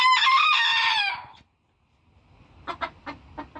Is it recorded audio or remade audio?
recorded